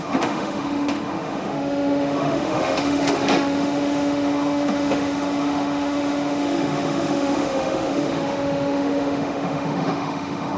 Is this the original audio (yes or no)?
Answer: no